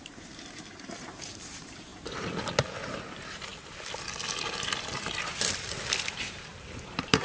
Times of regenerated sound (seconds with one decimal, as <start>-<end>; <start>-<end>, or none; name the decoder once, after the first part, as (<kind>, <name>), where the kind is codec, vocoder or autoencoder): 0.0-1.9 (vocoder, BigVGAN v2); 2.9-3.5; 6.1-7.2

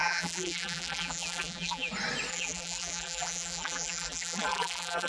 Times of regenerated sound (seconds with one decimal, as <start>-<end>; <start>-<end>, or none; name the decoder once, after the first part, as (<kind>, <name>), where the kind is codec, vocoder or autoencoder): 0.0-1.9 (vocoder, BigVGAN v2); 2.3-5.1

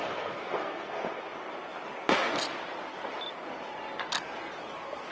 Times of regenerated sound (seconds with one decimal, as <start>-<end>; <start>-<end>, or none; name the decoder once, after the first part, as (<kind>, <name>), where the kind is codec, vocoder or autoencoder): 0.0-1.2 (codec, SNAC)